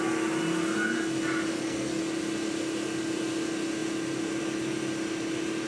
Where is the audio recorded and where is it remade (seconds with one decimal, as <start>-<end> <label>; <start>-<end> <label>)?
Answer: 0.0-1.5 recorded; 1.5-2.0 remade; 2.0-5.7 recorded